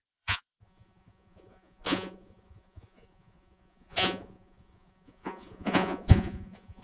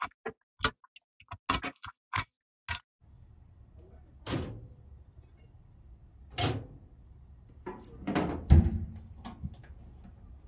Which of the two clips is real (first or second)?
second